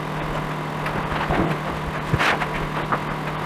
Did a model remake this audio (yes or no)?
no